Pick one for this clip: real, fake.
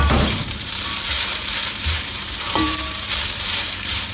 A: fake